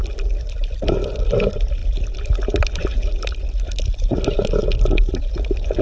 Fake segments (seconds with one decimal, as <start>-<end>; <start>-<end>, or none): none